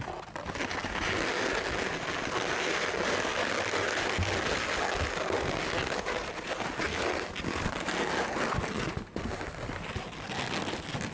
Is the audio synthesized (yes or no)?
no